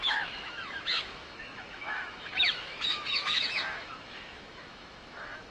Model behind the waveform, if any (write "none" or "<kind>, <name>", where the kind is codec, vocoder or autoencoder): autoencoder, DAC-VAE